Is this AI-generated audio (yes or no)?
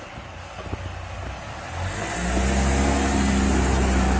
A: no